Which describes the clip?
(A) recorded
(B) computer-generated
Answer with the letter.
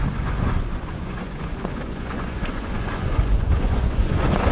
B